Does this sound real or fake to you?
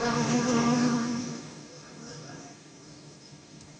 fake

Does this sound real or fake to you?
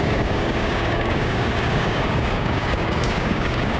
fake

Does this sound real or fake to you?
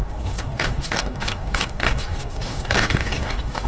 fake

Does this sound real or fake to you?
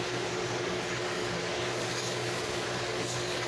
fake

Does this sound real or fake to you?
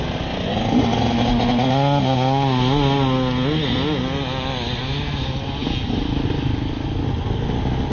real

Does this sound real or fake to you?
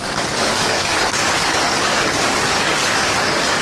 fake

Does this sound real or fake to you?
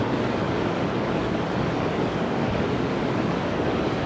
fake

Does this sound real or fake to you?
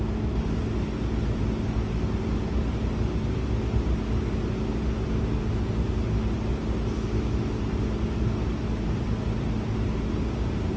real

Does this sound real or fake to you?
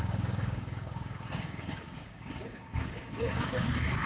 fake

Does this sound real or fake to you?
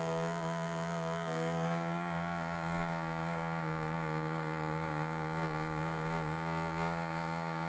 fake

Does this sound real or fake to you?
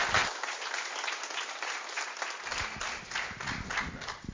real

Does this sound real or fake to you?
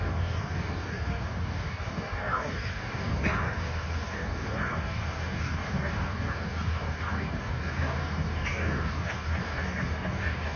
fake